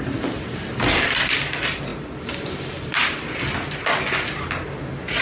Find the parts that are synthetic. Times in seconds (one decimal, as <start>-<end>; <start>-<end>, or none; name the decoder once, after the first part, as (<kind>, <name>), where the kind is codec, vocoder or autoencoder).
none